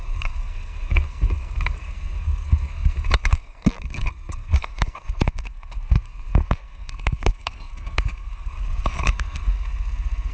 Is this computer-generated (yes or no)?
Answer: yes